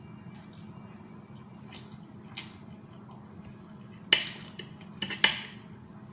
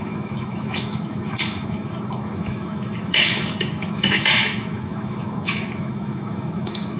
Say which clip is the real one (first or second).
first